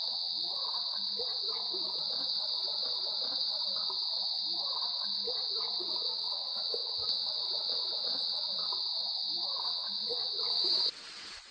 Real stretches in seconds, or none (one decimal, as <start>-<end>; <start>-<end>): 0.6-5.8; 8.8-9.6